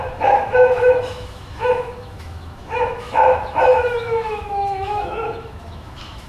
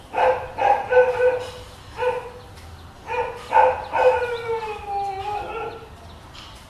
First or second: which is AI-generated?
first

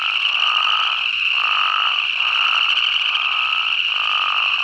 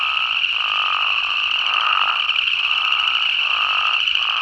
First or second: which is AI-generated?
second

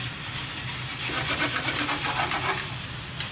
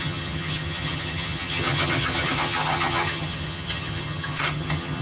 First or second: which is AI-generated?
second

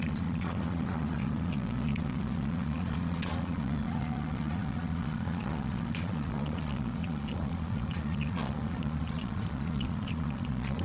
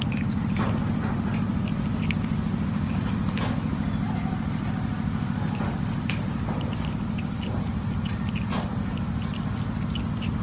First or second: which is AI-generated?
first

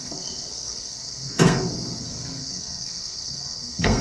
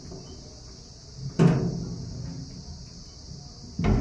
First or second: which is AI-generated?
first